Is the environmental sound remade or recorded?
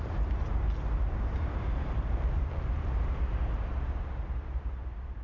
recorded